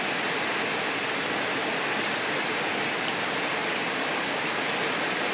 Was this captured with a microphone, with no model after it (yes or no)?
yes